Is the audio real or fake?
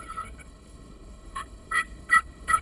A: fake